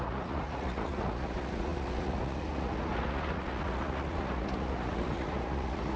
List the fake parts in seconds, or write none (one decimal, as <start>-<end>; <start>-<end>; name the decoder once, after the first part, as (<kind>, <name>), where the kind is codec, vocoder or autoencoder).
0.0-6.0 (vocoder, Vocos)